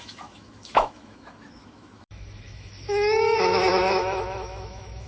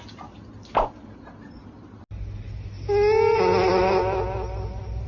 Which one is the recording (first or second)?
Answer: second